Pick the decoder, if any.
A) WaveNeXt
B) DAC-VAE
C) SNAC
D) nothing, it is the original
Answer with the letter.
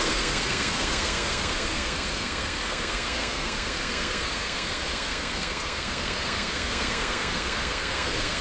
C